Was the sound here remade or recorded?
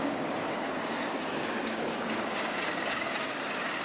remade